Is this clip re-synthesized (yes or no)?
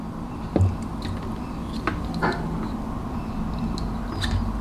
no